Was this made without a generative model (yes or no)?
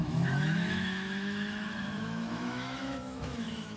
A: no